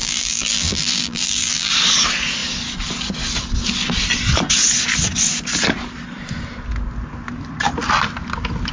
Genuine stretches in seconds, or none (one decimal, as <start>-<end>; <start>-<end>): 1.7-8.7